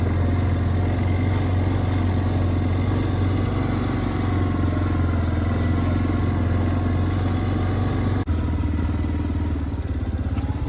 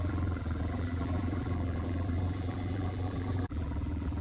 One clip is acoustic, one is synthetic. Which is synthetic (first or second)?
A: second